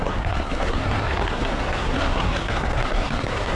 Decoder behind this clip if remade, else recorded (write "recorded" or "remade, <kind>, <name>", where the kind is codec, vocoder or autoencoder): remade, codec, SNAC